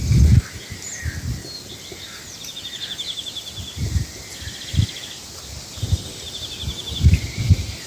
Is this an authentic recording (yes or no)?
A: yes